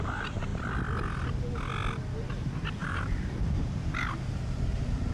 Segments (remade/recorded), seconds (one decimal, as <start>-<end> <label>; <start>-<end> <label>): 0.0-0.5 remade; 0.5-2.3 recorded; 2.3-5.1 remade